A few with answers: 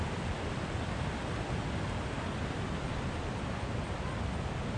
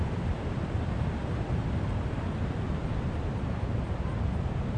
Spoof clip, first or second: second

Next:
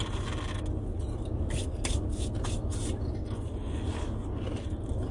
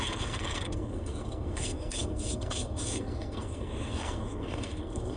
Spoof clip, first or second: second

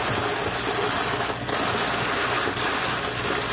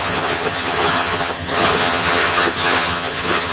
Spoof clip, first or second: second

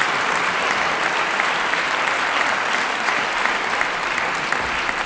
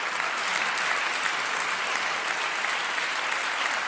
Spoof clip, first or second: first